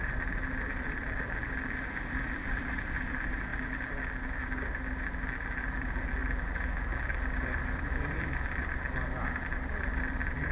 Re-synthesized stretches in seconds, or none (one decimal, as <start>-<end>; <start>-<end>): 0.0-3.5; 5.6-6.2; 7.3-10.5